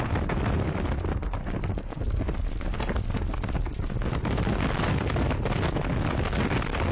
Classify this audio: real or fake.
real